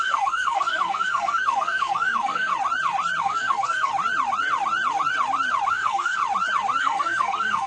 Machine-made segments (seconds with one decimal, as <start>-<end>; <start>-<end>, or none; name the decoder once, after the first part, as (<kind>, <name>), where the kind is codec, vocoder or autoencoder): 0.0-2.5 (codec, SNAC); 3.2-3.9; 5.7-6.2; 6.8-7.7